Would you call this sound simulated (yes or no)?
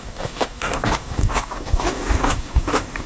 yes